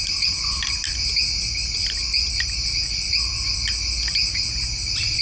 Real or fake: real